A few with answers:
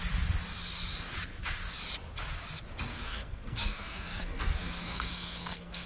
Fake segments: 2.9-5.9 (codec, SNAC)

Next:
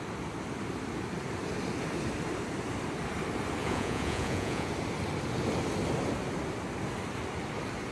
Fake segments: 3.6-4.7 (vocoder, Vocos)

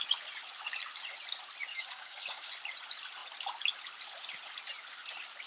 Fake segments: 1.7-2.5 (codec, DAC)

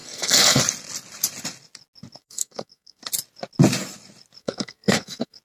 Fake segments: 0.0-0.6 (codec, SNAC); 2.2-3.0; 4.4-5.4

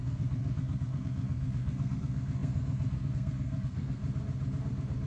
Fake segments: 0.0-4.0 (codec, SNAC)

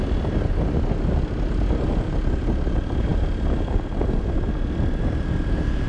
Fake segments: none

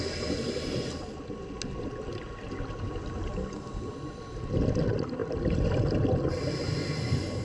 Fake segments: none

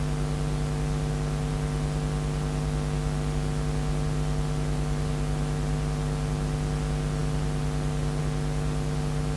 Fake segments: none